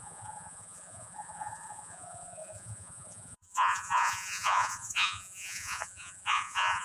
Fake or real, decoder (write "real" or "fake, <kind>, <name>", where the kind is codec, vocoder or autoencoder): fake, vocoder, Vocos